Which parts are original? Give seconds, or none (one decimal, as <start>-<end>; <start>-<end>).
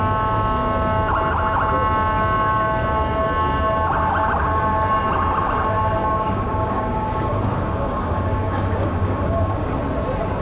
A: 0.0-6.0; 9.7-10.4